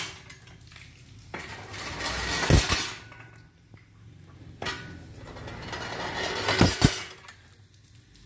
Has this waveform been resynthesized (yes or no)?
no